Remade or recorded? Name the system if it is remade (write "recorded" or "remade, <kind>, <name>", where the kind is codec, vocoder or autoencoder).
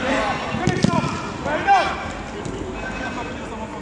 recorded